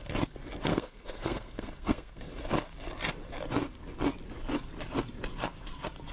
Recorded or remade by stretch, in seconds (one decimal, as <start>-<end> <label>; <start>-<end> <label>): 0.0-0.7 recorded; 0.7-2.3 remade; 2.3-6.1 recorded